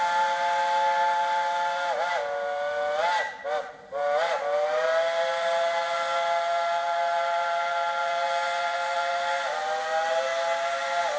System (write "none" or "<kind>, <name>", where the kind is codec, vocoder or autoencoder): none